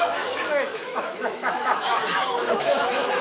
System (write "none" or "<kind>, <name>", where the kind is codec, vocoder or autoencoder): autoencoder, DAC-VAE